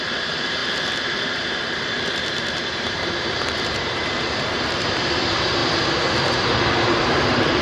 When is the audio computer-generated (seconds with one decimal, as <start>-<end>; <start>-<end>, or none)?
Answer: 0.0-5.6; 6.3-7.6